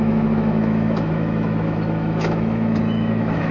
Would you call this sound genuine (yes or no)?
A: no